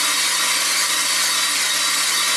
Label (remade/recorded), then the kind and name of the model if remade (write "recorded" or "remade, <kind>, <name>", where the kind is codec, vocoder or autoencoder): recorded